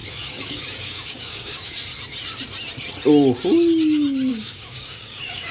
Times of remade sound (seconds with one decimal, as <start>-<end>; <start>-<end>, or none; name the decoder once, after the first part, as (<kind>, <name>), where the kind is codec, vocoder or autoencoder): 0.0-1.7 (codec, DAC); 4.3-5.5